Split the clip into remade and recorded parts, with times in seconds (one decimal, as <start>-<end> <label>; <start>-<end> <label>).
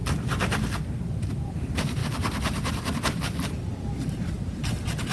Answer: 0.0-5.1 recorded